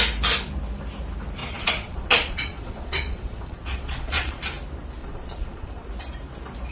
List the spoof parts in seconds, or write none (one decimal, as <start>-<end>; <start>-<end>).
1.4-4.4; 5.0-5.9

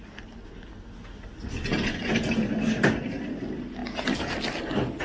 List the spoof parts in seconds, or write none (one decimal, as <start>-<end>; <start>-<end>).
none